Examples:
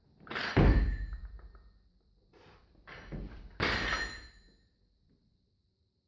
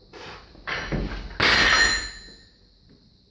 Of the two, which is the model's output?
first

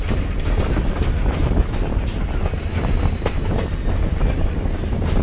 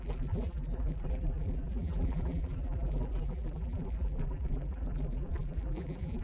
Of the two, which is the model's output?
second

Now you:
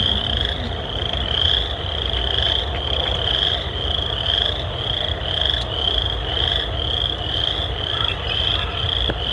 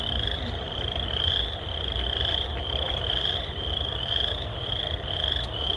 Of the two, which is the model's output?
second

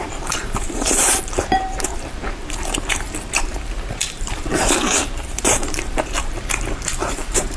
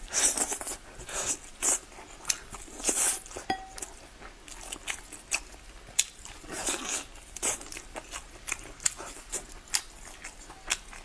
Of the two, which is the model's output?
first